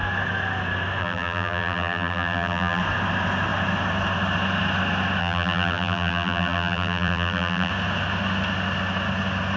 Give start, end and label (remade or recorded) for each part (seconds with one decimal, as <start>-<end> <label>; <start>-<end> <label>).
0.0-1.0 recorded; 1.0-2.8 remade; 2.8-5.2 recorded; 5.2-7.7 remade; 7.7-9.6 recorded